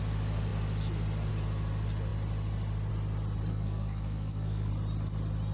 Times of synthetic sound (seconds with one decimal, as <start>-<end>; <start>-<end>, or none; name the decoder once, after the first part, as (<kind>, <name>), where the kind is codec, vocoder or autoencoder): 3.5-4.7 (codec, SNAC)